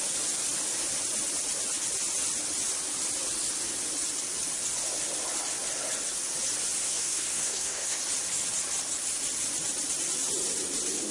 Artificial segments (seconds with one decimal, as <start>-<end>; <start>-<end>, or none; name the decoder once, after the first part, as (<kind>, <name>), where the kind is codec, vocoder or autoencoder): 6.8-8.0 (codec, SNAC)